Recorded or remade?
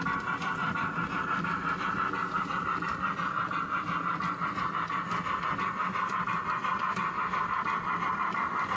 recorded